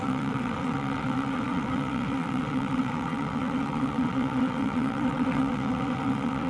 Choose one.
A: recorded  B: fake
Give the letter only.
B